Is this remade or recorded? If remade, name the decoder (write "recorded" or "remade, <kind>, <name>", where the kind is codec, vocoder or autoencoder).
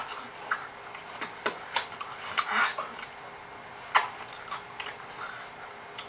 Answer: recorded